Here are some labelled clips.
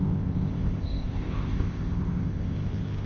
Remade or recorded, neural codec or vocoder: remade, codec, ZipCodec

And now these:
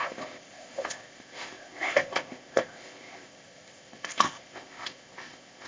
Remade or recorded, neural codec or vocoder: remade, codec, ZipCodec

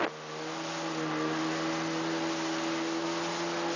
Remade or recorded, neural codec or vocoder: recorded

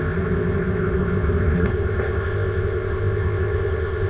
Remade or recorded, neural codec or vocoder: remade, codec, ZipCodec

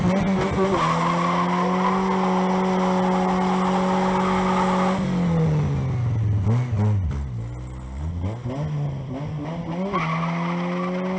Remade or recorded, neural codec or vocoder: recorded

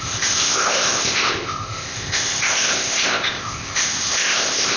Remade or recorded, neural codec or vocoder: remade, codec, ZipCodec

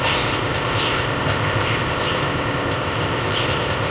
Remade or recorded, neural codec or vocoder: remade, codec, ZipCodec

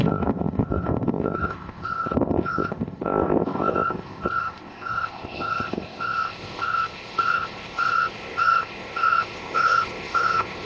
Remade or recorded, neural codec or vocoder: remade, codec, ZipCodec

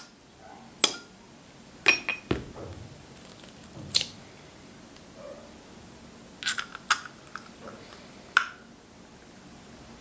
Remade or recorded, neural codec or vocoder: recorded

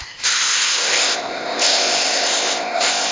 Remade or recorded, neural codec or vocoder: remade, codec, ZipCodec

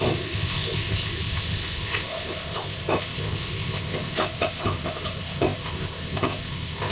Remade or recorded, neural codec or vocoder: remade, codec, ZipCodec